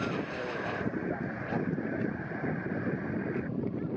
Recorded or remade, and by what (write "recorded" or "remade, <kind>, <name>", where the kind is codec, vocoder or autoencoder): remade, vocoder, BigVGAN v2